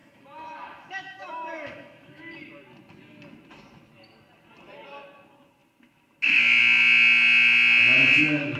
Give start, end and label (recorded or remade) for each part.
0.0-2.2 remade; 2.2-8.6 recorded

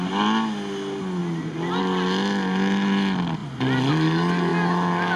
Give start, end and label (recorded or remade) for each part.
0.0-5.2 recorded

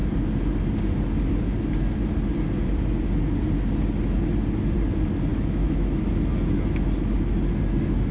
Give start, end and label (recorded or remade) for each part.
0.0-5.3 recorded; 5.3-6.0 remade; 6.0-8.1 recorded